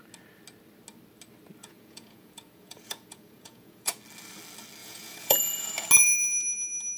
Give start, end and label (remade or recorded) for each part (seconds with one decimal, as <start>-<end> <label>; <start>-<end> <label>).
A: 0.0-1.6 recorded; 1.6-4.0 remade; 4.0-4.8 recorded; 4.8-5.7 remade; 5.7-7.0 recorded